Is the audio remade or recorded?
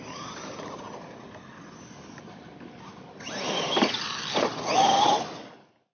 recorded